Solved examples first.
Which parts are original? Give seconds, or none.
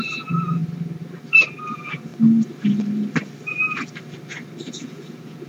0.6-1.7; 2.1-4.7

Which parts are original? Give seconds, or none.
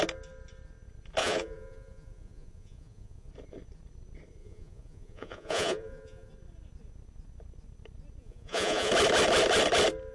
0.0-1.2; 3.3-4.4; 6.3-8.2; 8.9-10.1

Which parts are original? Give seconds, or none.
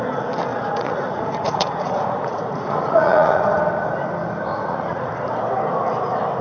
0.0-0.5; 3.4-4.5; 5.1-6.4